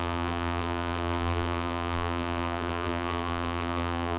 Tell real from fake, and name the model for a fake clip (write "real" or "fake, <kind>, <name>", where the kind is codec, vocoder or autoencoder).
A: fake, vocoder, BigVGAN v2